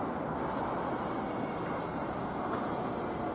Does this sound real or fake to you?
real